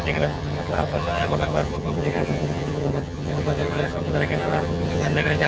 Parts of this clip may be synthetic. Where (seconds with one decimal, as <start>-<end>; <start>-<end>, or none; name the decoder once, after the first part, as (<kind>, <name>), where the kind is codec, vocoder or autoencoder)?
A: 0.0-5.5 (vocoder, HiFi-GAN)